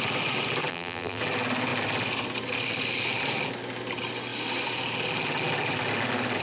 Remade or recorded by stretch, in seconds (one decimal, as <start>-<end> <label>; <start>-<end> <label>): 0.0-0.7 recorded; 0.7-1.2 remade; 1.2-6.4 recorded